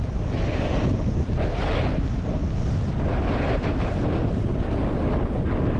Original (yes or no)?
yes